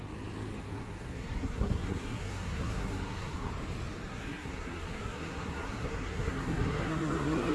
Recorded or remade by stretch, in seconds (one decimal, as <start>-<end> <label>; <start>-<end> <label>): 0.0-0.6 recorded; 0.6-3.5 remade; 3.5-4.1 recorded; 4.1-7.5 remade